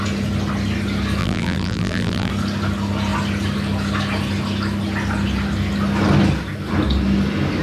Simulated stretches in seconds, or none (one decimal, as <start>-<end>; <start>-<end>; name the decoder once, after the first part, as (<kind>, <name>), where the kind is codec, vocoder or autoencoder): 1.2-2.3 (vocoder, BigVGAN v2)